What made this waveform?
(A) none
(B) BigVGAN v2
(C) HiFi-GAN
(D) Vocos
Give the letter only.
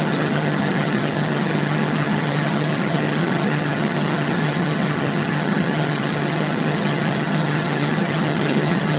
C